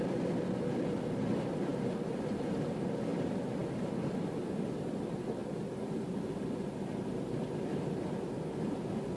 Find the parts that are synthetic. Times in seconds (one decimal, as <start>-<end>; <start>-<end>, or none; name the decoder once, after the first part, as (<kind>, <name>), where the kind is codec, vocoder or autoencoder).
1.7-2.6 (vocoder, BigVGAN v2); 5.4-6.2